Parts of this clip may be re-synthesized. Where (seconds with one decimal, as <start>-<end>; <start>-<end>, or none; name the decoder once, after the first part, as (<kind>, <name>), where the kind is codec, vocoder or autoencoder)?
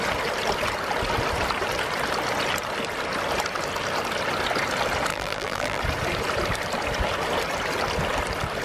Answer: 5.1-5.8 (vocoder, BigVGAN v2)